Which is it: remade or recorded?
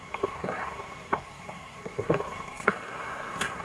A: remade